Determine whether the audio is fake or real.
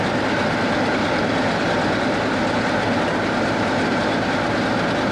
real